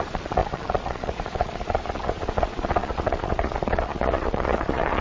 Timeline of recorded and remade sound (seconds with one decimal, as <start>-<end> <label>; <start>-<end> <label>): 0.0-5.0 remade

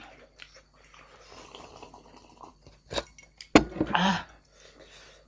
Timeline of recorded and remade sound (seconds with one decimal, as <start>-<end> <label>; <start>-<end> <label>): 0.0-5.3 recorded

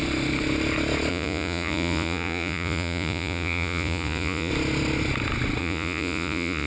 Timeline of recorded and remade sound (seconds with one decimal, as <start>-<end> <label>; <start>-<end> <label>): 0.0-1.1 recorded; 1.1-4.5 remade; 4.5-5.6 recorded; 5.6-6.7 remade

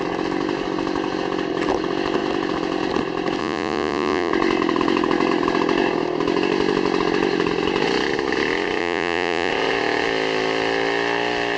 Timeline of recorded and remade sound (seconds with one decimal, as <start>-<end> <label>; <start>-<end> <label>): 0.0-3.4 recorded; 3.4-4.3 remade; 4.3-8.8 recorded; 8.8-9.5 remade; 9.5-11.6 recorded

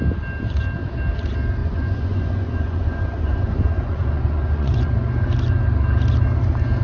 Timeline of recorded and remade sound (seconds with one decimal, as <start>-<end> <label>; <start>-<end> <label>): 0.0-1.6 recorded; 1.6-4.9 remade; 4.9-6.8 recorded